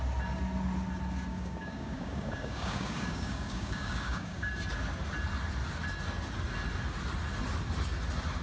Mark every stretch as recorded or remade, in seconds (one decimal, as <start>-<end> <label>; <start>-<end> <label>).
0.0-1.3 recorded; 1.3-4.5 remade; 4.5-8.4 recorded